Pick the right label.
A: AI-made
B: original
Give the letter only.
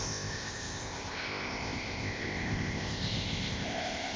A